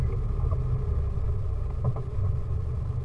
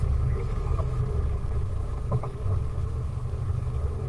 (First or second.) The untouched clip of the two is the first